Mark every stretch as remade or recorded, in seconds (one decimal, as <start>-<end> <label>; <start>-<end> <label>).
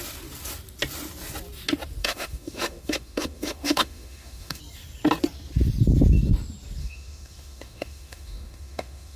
0.0-2.0 recorded; 2.0-4.6 remade; 4.6-6.8 recorded; 6.8-9.2 remade